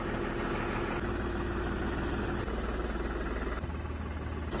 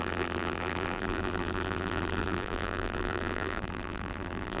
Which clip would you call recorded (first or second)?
first